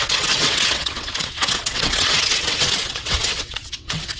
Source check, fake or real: fake